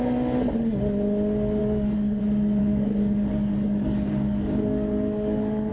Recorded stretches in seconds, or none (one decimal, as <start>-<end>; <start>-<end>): 0.0-1.6; 2.2-2.6